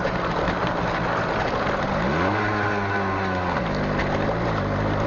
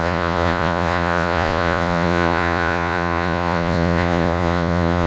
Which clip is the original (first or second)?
first